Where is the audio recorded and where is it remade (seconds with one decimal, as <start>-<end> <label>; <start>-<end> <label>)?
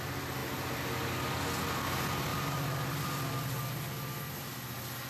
0.0-2.3 recorded; 2.3-3.4 remade; 3.4-5.1 recorded